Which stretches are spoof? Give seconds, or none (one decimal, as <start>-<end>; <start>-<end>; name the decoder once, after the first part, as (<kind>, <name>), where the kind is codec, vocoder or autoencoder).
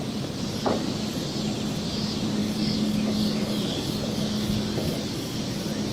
2.4-5.4 (codec, DAC)